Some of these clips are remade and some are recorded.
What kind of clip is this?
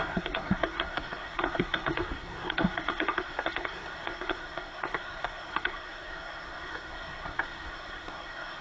remade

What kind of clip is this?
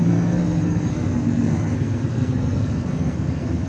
remade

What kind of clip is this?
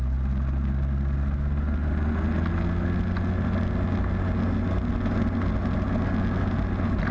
recorded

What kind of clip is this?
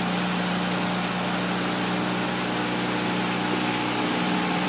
recorded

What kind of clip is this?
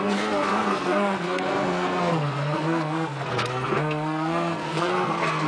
remade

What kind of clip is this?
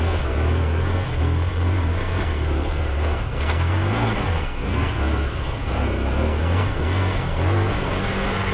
remade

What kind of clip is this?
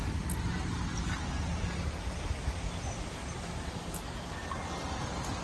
recorded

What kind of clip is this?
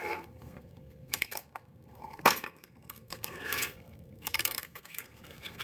remade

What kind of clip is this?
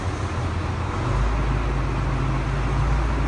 recorded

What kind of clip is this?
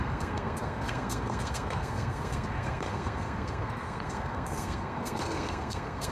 remade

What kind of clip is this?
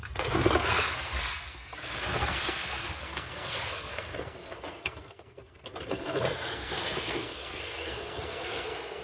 remade